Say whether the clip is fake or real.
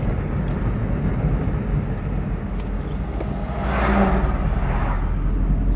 real